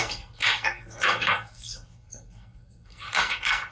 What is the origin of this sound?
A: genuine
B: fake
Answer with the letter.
B